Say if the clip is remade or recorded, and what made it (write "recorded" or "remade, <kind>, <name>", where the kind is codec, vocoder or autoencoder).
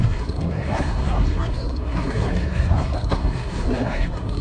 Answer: remade, codec, SNAC